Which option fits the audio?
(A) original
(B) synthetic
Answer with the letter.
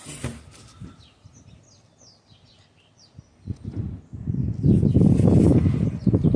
A